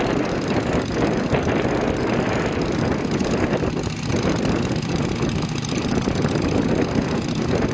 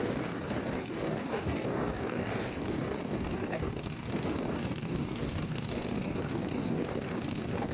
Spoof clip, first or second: second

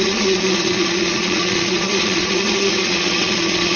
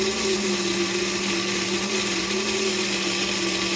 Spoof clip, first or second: first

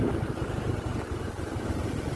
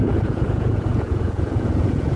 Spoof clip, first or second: second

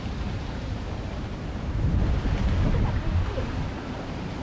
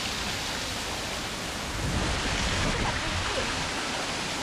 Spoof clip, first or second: first